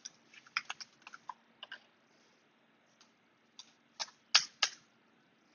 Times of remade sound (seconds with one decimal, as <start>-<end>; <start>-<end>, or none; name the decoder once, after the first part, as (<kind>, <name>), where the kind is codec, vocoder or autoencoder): none